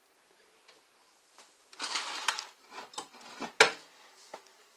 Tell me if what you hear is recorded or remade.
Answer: recorded